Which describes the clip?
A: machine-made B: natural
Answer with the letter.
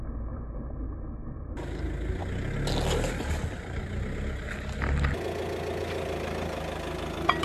B